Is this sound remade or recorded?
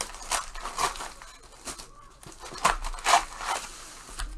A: recorded